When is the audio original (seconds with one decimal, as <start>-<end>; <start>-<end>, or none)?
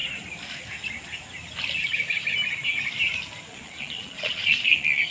0.0-3.5